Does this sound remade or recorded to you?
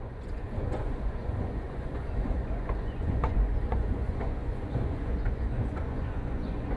remade